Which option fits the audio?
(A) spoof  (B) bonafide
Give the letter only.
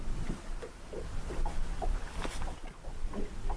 B